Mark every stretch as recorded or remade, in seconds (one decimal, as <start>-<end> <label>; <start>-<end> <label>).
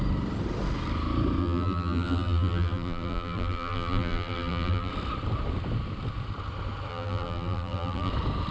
0.0-1.4 recorded; 1.4-4.9 remade; 4.9-6.9 recorded; 6.9-8.1 remade; 8.1-8.5 recorded